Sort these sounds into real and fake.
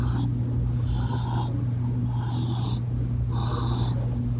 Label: real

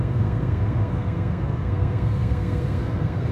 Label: fake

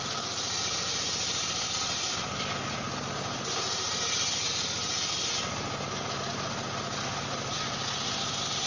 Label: real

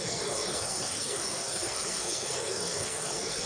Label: fake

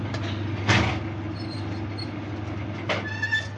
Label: real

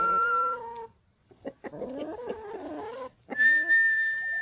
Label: real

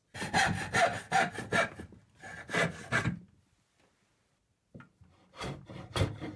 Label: real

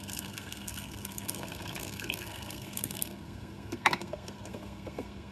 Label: fake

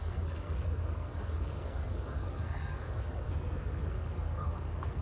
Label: fake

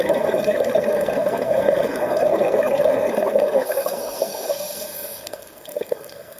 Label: fake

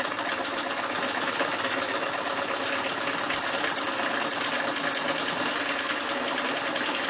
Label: real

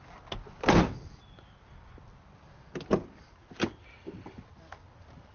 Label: real